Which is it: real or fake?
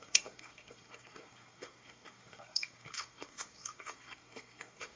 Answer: fake